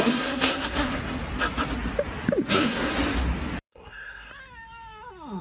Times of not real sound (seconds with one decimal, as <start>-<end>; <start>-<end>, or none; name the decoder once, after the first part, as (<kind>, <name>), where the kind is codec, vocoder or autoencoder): 0.0-1.0 (codec, SNAC); 2.5-2.9; 3.6-4.3